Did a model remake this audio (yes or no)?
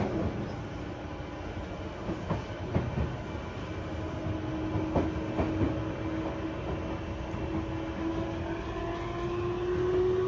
no